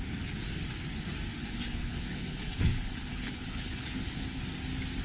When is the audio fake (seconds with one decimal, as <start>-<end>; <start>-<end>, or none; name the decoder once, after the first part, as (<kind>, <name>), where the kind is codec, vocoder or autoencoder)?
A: 1.4-4.4 (codec, HILCodec)